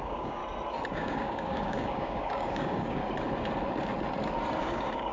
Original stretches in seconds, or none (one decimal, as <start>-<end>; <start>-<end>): 0.4-0.9; 3.0-4.6